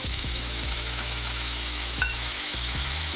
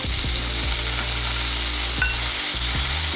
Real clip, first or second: second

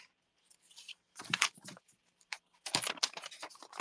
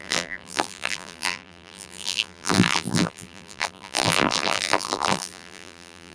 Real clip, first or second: first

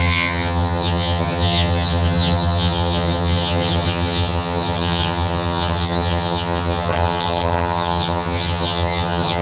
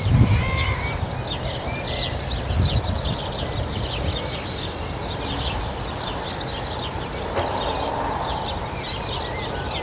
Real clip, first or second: second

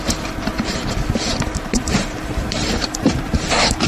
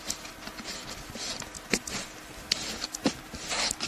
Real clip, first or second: second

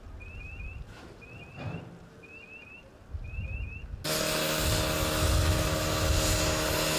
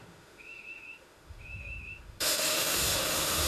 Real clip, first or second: first